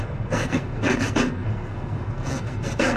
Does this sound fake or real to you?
fake